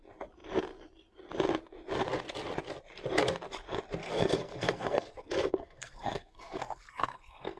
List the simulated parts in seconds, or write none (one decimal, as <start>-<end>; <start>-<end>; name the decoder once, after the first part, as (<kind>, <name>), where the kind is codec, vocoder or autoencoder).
4.0-7.6 (codec, SNAC)

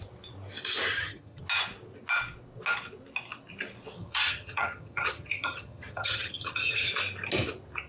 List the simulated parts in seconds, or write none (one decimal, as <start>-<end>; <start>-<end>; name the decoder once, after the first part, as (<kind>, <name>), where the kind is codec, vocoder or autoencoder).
0.9-1.4 (vocoder, HiFi-GAN); 4.0-6.9

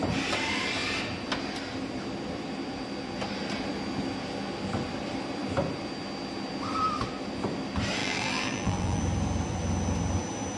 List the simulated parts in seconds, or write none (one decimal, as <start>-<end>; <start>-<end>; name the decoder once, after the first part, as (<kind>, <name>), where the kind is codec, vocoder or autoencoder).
8.0-9.0 (vocoder, BigVGAN v2)

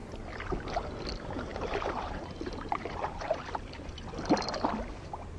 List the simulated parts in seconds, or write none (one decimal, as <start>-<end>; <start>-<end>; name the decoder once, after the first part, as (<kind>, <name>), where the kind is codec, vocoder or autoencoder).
1.5-3.9 (vocoder, BigVGAN v2)

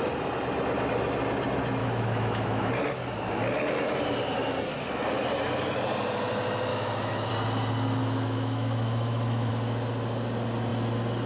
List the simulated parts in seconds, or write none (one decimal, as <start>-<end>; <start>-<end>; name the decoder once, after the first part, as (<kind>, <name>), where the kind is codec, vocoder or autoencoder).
1.8-2.7 (autoencoder, DAC-VAE); 6.7-7.3; 8.0-9.5